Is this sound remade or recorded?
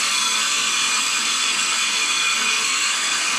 remade